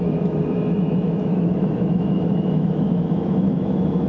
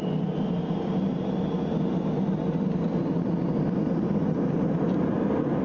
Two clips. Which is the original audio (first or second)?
second